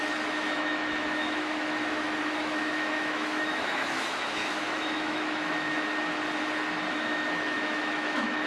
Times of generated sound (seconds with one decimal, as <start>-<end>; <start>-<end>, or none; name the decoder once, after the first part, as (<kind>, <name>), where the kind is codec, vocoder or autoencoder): 0.0-5.9 (autoencoder, DAC-VAE); 6.9-8.5

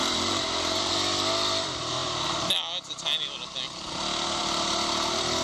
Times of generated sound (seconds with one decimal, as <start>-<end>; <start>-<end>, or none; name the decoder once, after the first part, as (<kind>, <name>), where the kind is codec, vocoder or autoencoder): 0.0-0.9 (vocoder, BigVGAN v2)

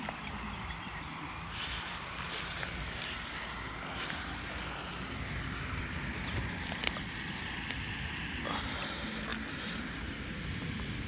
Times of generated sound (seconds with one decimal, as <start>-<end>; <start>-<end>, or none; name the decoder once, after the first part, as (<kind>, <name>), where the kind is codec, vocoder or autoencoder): none